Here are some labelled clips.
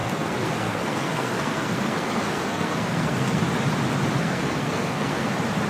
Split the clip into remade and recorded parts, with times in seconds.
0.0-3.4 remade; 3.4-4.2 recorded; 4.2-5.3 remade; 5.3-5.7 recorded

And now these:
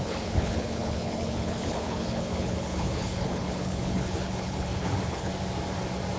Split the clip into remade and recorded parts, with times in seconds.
0.0-5.3 remade; 5.3-6.2 recorded

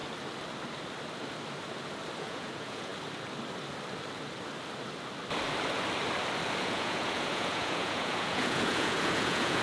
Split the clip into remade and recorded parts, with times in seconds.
0.0-2.2 recorded; 2.2-2.9 remade; 2.9-6.6 recorded; 6.6-9.6 remade

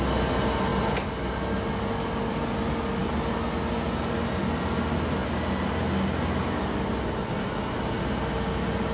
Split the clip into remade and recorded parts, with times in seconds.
0.0-8.9 recorded

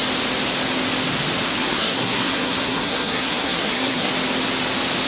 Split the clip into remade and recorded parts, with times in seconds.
0.0-1.6 recorded; 1.6-4.1 remade; 4.1-5.1 recorded

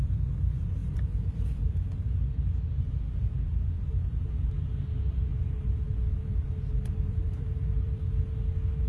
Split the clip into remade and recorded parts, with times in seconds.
0.0-0.8 recorded; 0.8-2.0 remade; 2.0-5.3 recorded; 5.3-8.3 remade; 8.3-8.9 recorded